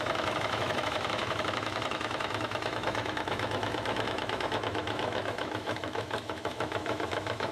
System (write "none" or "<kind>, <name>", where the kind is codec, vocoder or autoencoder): autoencoder, DAC-VAE